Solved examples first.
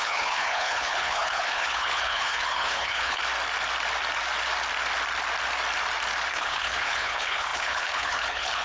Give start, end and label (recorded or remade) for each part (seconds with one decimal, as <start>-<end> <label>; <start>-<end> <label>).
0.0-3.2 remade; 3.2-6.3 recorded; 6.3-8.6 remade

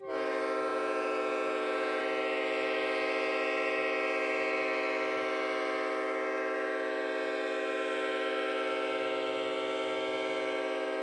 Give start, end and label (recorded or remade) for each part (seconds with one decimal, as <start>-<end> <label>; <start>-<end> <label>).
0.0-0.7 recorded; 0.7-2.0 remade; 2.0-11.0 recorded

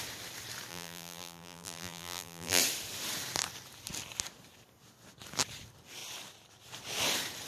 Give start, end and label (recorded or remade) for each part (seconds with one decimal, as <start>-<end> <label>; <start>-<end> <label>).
0.0-0.7 recorded; 0.7-2.6 remade; 2.6-7.5 recorded